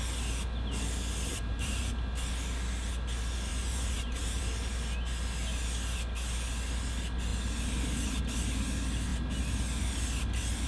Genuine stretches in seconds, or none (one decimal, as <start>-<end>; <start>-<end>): 0.0-1.3; 1.8-3.5; 4.4-10.7